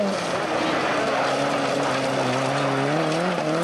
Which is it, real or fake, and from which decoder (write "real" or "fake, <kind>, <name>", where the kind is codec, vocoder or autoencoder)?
real